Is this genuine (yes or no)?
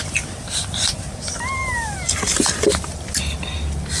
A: yes